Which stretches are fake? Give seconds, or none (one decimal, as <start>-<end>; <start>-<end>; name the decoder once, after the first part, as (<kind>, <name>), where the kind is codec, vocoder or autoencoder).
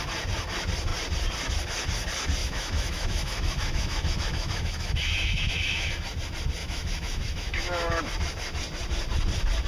2.4-5.9 (autoencoder, DAC-VAE); 6.6-8.0